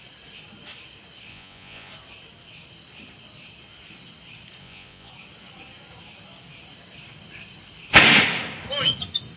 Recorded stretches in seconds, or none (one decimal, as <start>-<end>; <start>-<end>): 0.0-1.3; 1.9-4.6; 5.1-9.4